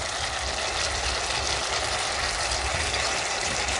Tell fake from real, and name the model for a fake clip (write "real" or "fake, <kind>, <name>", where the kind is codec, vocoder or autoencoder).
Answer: real